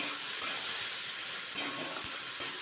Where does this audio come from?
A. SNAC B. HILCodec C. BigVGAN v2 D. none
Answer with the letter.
D